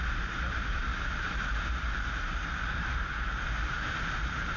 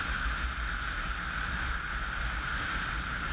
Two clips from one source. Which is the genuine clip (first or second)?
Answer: second